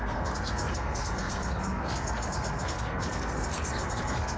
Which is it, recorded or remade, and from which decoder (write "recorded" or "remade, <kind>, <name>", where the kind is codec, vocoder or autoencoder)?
remade, codec, SNAC